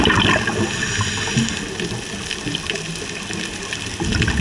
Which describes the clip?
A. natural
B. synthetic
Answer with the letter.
A